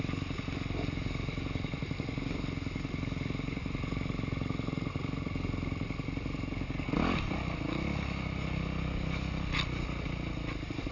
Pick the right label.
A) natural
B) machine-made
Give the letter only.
A